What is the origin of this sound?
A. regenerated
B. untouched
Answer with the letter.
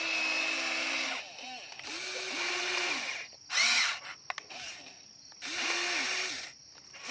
B